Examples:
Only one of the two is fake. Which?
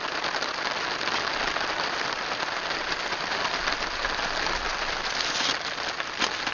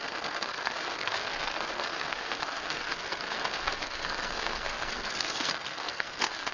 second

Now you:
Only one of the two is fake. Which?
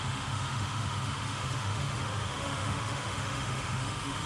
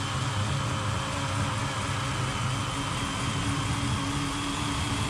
first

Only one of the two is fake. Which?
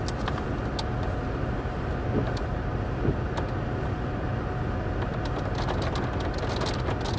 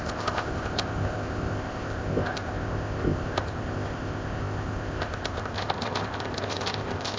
second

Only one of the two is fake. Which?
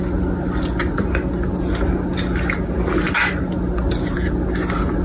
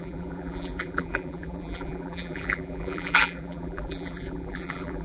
second